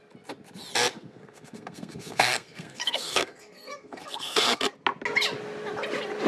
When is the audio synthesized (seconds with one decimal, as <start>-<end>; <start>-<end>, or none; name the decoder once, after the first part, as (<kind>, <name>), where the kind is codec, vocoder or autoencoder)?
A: 0.9-4.6 (codec, SNAC)